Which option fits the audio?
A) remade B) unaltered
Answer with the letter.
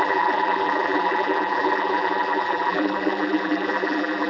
A